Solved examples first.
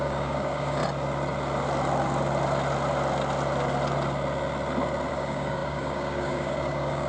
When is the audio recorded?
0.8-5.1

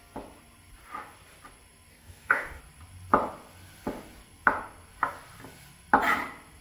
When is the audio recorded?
0.0-1.9; 2.6-6.6

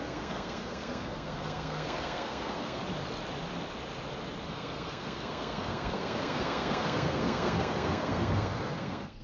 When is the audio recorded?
2.8-4.5

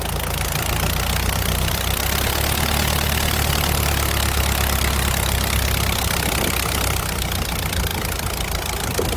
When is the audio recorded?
0.0-9.2

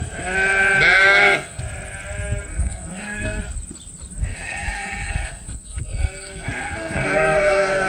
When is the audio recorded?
0.0-1.0; 1.6-2.5; 3.4-4.3